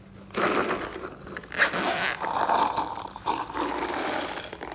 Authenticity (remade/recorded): recorded